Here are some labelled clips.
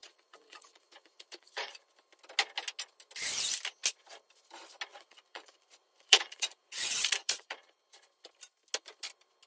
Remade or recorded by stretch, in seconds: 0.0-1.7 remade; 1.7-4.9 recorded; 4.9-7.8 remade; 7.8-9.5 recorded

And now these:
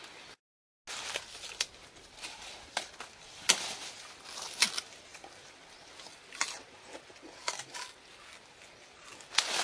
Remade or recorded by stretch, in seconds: 0.0-9.6 recorded

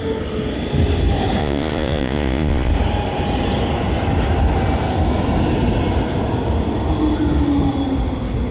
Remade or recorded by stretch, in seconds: 0.0-1.4 recorded; 1.4-2.7 remade; 2.7-8.5 recorded

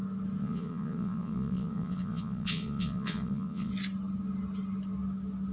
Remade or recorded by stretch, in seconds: 0.0-0.4 recorded; 0.4-3.7 remade; 3.7-5.5 recorded

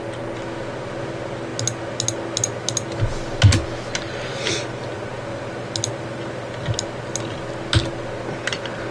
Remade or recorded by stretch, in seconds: 0.0-8.9 recorded

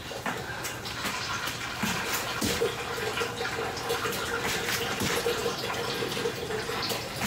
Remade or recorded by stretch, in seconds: 0.0-7.3 recorded

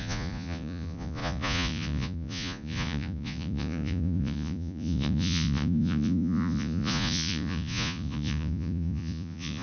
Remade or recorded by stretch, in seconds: 0.0-9.6 remade

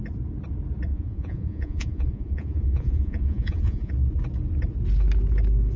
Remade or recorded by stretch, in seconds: 0.0-0.9 recorded; 0.9-3.9 remade; 3.9-5.8 recorded